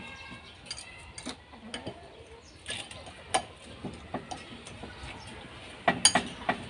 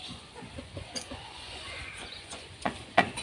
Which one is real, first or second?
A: first